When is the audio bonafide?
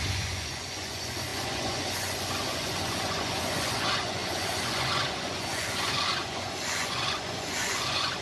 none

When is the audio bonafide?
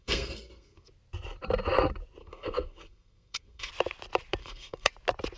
0.9-2.2; 3.7-4.4; 4.9-5.4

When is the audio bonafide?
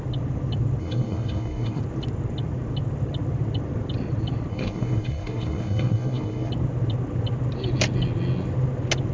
0.0-0.8; 1.8-4.5; 6.5-9.1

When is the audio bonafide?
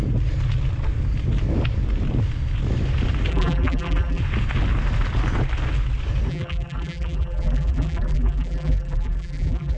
0.0-3.3; 4.2-6.3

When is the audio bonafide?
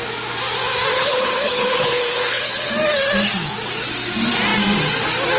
0.0-0.9; 2.7-5.4